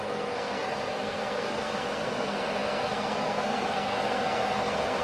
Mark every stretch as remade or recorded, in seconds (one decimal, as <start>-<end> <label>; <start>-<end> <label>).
0.0-5.0 remade